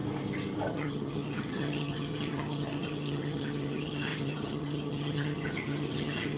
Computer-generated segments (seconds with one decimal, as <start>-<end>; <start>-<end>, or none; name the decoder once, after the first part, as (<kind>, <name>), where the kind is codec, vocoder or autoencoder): 0.7-6.4 (vocoder, HiFi-GAN)